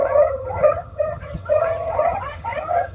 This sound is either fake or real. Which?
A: fake